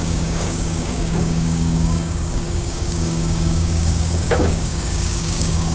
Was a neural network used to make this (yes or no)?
yes